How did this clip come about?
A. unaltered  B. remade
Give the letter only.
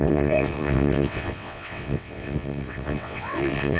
B